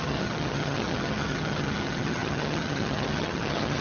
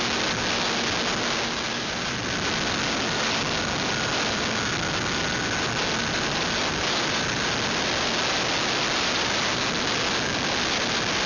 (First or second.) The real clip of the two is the second